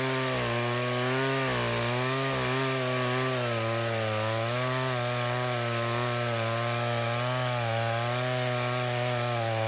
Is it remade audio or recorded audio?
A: recorded